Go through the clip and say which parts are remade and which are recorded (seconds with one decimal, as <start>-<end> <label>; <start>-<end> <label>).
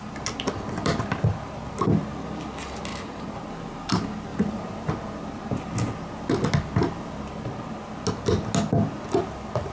0.0-2.9 recorded; 2.9-3.5 remade; 3.5-4.3 recorded; 4.3-4.9 remade; 4.9-9.7 recorded